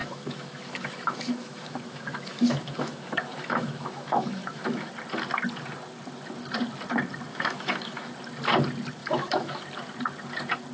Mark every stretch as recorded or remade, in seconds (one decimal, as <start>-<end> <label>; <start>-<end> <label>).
0.0-4.9 remade; 4.9-7.3 recorded; 7.3-8.1 remade; 8.1-9.0 recorded; 9.0-9.6 remade; 9.6-10.7 recorded